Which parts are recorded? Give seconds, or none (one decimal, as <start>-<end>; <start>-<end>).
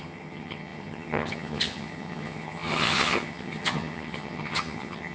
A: none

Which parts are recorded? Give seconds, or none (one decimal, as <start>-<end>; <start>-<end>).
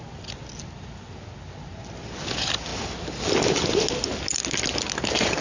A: 0.0-5.4